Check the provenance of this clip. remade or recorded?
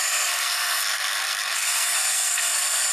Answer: remade